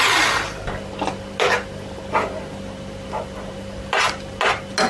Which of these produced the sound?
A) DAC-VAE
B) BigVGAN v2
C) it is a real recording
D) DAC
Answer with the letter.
C